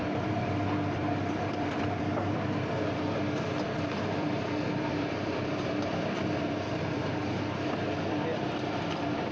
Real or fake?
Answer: fake